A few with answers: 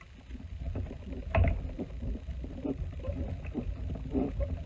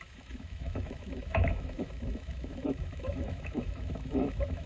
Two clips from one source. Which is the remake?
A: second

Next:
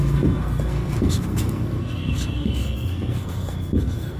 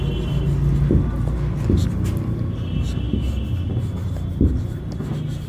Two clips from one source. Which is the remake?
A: first